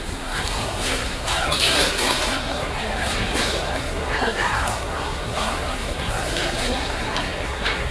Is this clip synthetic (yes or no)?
yes